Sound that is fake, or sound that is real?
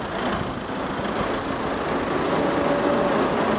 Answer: real